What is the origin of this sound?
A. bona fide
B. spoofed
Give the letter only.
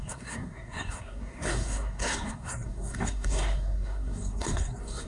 B